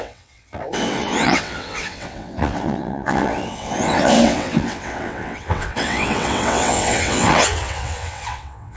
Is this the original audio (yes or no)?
no